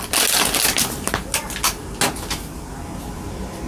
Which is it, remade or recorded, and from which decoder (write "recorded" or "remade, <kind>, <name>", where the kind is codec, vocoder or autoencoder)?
recorded